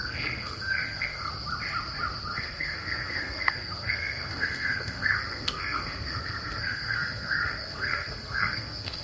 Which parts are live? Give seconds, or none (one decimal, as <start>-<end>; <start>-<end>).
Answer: 1.3-2.3